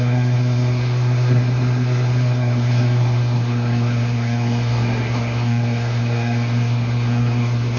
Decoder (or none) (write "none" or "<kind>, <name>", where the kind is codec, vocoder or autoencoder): codec, SNAC